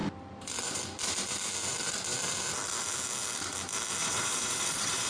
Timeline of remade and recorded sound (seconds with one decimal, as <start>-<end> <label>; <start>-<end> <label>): 0.0-4.0 recorded; 4.0-5.1 remade